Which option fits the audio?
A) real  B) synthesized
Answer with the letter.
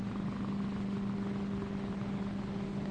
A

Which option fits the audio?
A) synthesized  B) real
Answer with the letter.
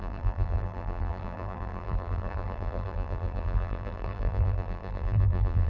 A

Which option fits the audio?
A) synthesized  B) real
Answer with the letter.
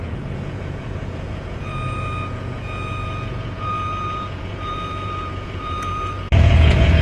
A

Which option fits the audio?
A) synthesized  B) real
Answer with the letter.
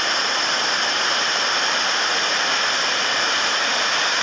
A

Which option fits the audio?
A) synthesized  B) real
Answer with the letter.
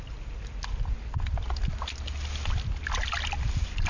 B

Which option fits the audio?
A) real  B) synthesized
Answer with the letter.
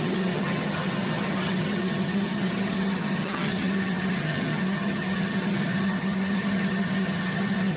B